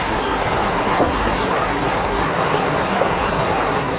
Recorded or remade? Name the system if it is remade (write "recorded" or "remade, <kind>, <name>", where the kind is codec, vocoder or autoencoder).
remade, codec, SNAC